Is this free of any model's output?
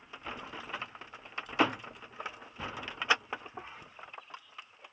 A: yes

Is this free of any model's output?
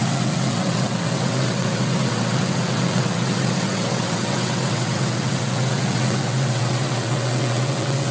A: no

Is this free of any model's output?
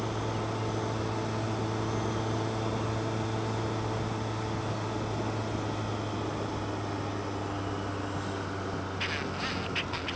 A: yes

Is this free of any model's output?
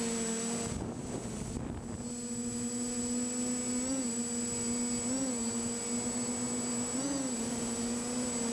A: yes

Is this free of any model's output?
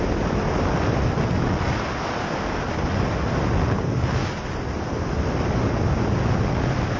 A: yes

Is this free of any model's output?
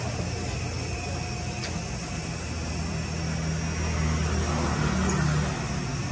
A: yes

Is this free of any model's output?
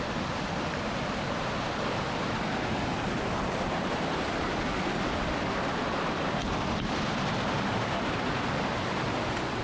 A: yes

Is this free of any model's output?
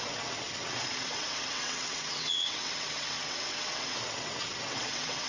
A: no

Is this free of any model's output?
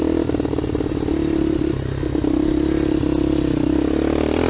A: yes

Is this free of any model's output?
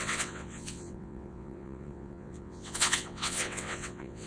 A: no